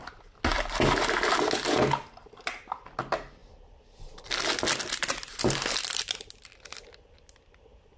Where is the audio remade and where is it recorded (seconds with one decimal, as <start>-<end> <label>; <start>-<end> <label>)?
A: 0.0-8.0 recorded